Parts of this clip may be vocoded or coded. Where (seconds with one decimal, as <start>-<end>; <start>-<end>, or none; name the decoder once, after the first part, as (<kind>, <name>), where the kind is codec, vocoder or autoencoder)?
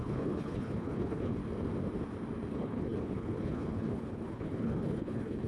0.0-1.4 (codec, HILCodec); 2.5-5.5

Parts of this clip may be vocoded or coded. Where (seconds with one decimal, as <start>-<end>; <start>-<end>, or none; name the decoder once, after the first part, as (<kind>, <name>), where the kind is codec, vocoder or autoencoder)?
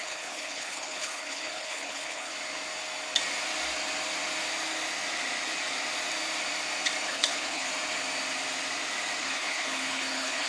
0.0-2.3 (codec, HILCodec); 7.1-7.7; 9.2-10.5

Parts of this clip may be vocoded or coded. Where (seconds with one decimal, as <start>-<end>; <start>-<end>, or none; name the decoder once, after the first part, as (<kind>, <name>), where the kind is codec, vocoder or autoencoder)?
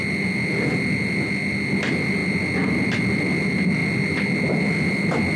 none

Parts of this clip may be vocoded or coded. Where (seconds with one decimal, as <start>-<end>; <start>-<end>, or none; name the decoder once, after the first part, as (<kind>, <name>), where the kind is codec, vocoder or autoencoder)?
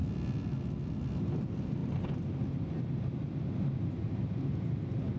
none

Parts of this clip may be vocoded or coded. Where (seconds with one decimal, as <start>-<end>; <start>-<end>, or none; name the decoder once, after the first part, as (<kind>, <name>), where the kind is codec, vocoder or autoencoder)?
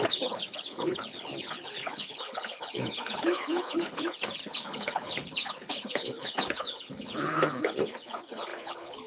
0.0-9.1 (codec, HILCodec)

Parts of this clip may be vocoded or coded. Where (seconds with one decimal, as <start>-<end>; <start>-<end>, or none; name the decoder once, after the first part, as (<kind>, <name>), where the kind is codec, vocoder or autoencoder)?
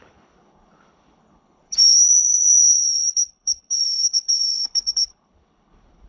0.0-6.1 (codec, HILCodec)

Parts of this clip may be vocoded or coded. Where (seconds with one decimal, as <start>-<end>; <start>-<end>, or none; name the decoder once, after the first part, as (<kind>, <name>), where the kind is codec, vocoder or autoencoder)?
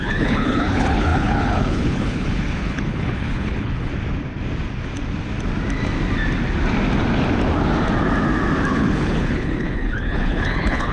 0.0-3.9 (codec, HILCodec); 8.7-10.9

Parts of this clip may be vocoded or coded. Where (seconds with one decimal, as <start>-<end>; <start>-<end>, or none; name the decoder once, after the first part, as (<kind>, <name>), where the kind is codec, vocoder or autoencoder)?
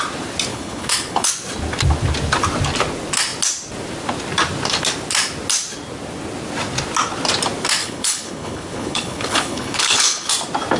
0.5-1.3 (codec, HILCodec); 7.8-10.3